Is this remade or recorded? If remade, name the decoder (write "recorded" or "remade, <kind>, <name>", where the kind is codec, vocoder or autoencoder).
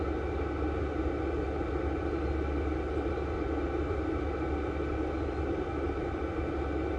recorded